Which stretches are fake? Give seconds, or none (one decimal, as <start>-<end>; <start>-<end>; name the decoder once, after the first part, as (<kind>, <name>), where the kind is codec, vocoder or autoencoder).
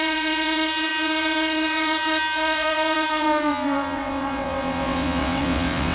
0.0-5.9 (vocoder, WaveNeXt)